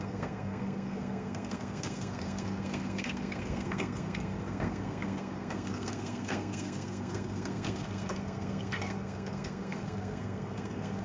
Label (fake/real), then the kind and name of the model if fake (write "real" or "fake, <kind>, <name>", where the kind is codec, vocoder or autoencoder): fake, codec, SNAC